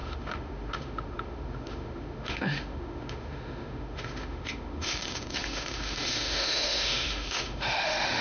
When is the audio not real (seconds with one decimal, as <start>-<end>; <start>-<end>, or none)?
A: 0.0-8.2